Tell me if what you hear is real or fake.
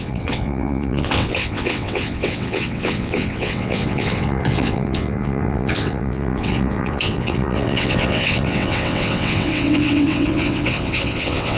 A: fake